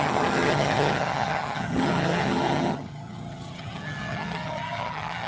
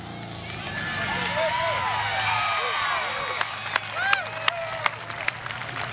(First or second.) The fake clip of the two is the first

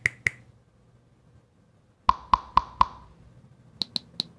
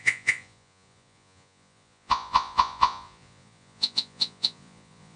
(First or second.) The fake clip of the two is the second